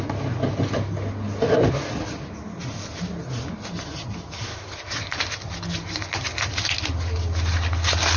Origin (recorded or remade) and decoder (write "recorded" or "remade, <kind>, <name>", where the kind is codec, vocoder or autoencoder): recorded